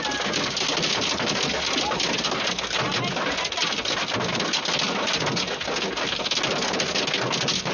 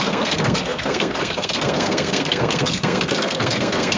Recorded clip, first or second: first